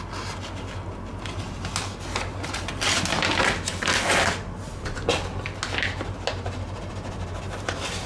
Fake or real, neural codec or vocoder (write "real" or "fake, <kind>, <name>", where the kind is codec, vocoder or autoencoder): real